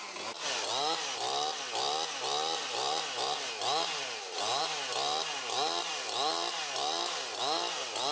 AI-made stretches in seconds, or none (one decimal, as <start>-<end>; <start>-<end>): none